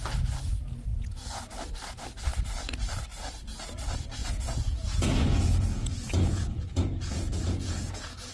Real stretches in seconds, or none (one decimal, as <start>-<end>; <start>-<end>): 0.0-0.9; 1.4-3.1; 3.7-4.2